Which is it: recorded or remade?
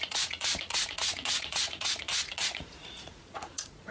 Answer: remade